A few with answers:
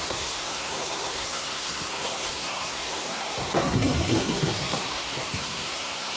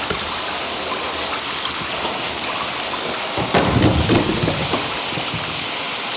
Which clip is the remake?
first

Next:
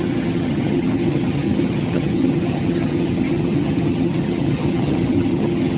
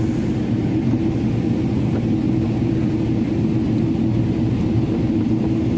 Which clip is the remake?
first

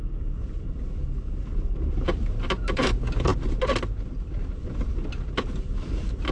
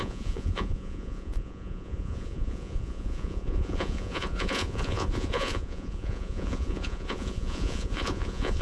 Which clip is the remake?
second